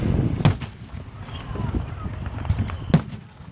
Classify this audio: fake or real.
real